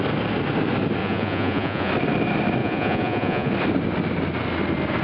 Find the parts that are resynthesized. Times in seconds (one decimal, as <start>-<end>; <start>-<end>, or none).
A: 1.0-1.9; 2.6-3.5